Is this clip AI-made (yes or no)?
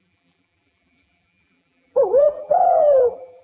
yes